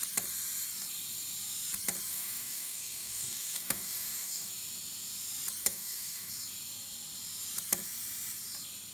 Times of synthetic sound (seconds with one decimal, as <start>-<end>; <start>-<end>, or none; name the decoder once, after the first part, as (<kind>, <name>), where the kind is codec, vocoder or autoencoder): 2.1-4.5 (codec, DAC); 5.6-6.3

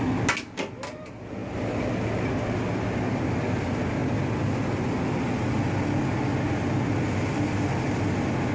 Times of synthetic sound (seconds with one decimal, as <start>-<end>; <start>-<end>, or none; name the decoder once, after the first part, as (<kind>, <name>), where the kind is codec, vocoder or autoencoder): none

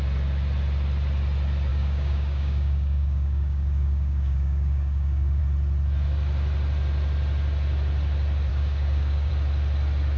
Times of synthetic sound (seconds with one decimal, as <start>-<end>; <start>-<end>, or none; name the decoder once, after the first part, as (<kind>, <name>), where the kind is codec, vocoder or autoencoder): 1.7-5.4 (codec, DAC); 8.5-9.3

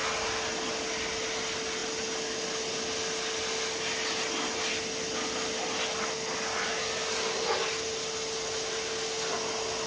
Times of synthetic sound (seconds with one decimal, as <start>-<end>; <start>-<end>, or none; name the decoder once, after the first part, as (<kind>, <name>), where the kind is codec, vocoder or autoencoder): none